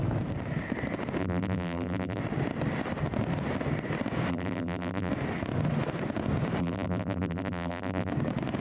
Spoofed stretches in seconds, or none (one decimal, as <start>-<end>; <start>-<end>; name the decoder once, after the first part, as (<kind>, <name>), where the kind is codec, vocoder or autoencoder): 1.2-2.2 (vocoder, BigVGAN v2); 4.3-5.1; 6.6-8.1